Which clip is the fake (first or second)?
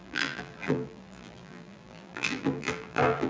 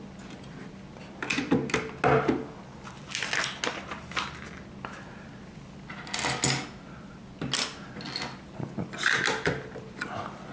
first